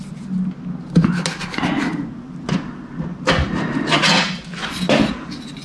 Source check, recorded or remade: recorded